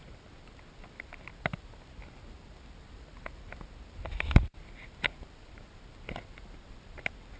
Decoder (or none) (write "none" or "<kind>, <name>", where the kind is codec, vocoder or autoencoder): none